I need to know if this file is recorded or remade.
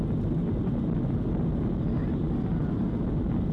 recorded